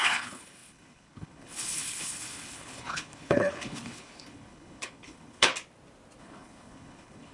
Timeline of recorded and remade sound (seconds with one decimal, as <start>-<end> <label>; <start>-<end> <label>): 0.0-5.5 remade; 5.5-6.2 recorded; 6.2-7.3 remade